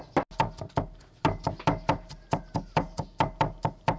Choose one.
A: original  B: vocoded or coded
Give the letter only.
A